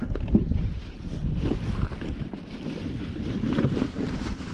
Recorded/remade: remade